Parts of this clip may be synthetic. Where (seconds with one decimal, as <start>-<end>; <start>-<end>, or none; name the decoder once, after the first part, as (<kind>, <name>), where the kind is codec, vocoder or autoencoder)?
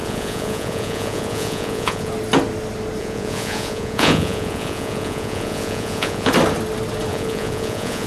0.0-2.1 (vocoder, Vocos); 3.0-6.3; 7.1-8.1